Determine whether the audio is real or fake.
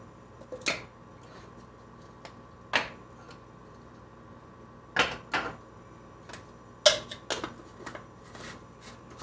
real